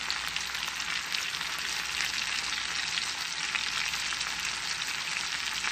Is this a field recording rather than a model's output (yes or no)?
yes